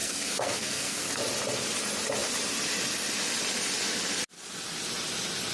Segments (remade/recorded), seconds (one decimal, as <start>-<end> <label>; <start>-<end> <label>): 0.0-1.2 remade; 1.2-5.5 recorded